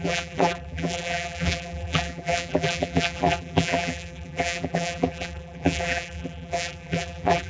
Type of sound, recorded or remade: remade